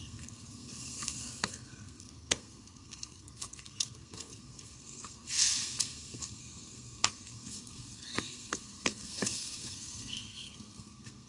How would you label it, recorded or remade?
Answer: remade